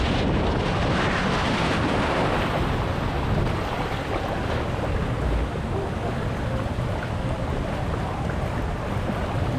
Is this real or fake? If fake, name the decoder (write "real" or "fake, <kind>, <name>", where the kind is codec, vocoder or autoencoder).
real